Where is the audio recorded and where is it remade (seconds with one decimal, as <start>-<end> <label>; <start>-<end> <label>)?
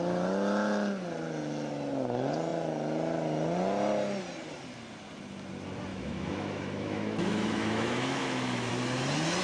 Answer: 0.0-5.9 recorded; 5.9-8.7 remade; 8.7-9.4 recorded